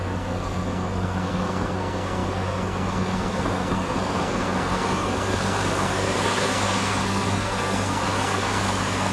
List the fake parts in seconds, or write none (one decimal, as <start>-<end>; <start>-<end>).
0.0-9.1